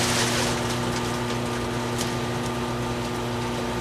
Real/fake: real